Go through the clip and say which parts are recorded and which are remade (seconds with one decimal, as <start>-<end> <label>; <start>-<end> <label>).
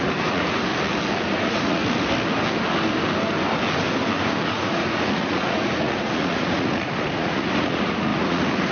0.0-0.7 remade; 0.7-1.3 recorded; 1.3-1.8 remade; 1.8-4.4 recorded; 4.4-8.7 remade